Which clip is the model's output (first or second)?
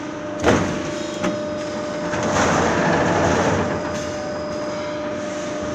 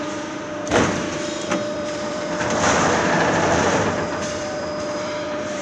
second